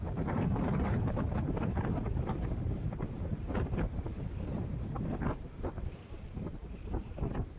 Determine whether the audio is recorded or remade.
remade